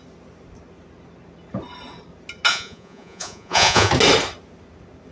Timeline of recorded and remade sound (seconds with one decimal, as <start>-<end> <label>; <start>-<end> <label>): 0.0-2.5 recorded; 2.5-3.9 remade; 3.9-5.1 recorded